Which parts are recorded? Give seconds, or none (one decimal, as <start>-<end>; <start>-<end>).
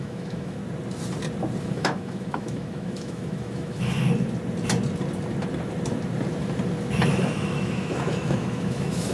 0.6-1.6; 4.0-7.1